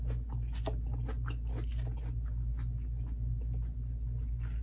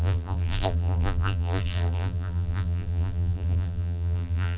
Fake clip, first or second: second